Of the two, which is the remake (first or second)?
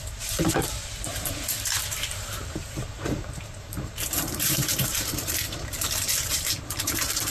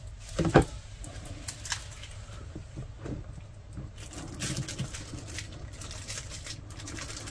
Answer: first